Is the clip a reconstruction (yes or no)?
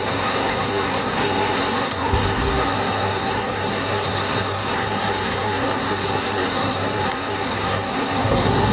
yes